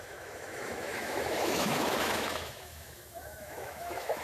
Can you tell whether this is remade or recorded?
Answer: remade